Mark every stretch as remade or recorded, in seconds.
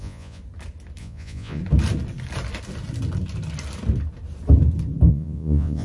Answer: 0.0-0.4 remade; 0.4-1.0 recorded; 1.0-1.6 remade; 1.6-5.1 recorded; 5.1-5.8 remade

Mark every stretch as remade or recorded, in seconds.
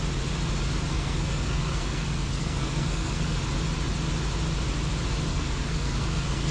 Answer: 0.0-0.9 recorded; 0.9-3.4 remade; 3.4-5.3 recorded; 5.3-6.5 remade